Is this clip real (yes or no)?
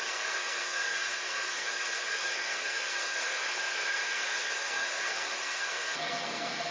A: no